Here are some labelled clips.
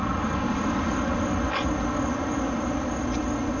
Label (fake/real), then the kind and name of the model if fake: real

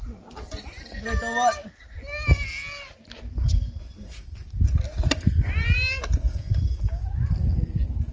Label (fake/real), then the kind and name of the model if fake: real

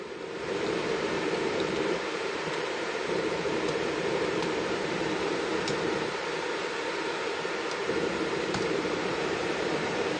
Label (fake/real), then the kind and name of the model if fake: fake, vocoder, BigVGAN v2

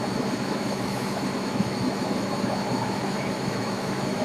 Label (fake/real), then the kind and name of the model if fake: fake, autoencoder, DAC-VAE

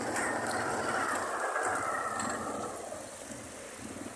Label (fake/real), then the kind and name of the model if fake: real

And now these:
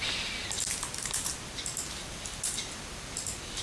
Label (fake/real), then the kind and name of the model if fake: real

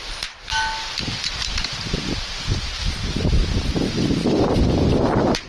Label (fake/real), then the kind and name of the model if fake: real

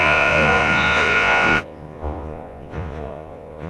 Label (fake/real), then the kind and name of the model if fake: fake, vocoder, Vocos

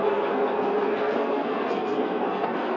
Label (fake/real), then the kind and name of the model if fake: fake, codec, SNAC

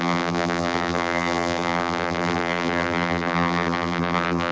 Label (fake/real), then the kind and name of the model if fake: fake, vocoder, BigVGAN v2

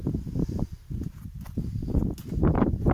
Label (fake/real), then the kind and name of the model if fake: fake, vocoder, BigVGAN v2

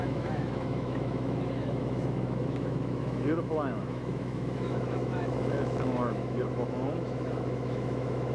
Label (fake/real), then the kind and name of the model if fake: fake, autoencoder, DAC-VAE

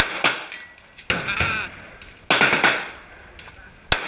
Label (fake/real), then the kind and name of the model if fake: real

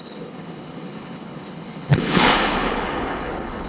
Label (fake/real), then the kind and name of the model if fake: fake, codec, HILCodec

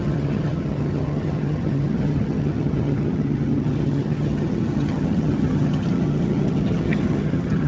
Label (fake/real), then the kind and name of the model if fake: fake, vocoder, HiFi-GAN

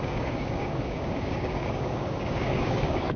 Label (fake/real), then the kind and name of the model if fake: fake, codec, DAC